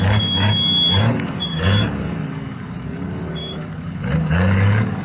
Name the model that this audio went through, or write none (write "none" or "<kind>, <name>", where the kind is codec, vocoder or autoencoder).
codec, DAC